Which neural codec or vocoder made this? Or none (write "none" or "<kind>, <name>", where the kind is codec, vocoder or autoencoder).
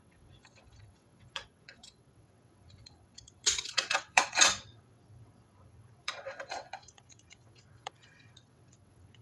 vocoder, WaveNeXt